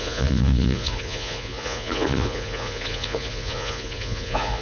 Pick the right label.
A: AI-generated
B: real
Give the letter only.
A